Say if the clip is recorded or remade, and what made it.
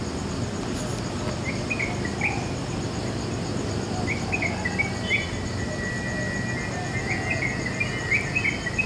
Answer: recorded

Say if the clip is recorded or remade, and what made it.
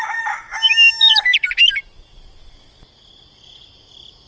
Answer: recorded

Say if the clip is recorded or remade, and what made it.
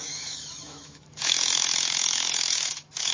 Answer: remade, autoencoder, DAC-VAE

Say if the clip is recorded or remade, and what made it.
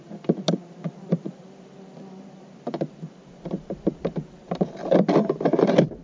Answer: recorded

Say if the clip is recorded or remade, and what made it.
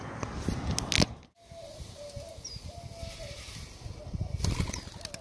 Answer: recorded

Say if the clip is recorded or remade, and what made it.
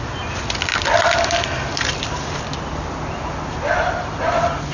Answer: recorded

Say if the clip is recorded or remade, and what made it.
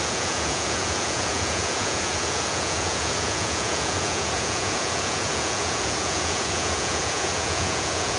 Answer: remade, vocoder, Vocos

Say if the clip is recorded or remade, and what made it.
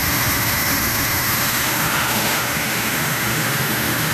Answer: remade, autoencoder, DAC-VAE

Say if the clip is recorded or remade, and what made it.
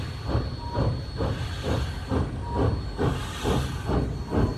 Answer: recorded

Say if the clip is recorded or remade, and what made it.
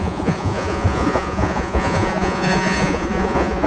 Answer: remade, vocoder, Vocos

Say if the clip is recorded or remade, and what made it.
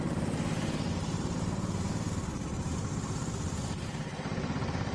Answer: remade, vocoder, BigVGAN v2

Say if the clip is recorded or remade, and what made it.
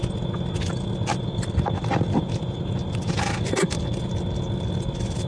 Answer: recorded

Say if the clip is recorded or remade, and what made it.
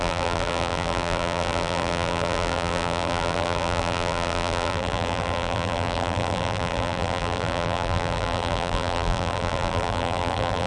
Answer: remade, vocoder, BigVGAN v2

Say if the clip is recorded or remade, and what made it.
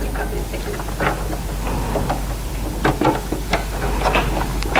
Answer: recorded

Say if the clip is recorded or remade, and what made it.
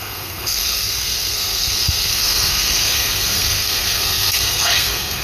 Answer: remade, codec, SNAC